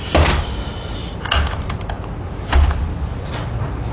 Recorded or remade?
recorded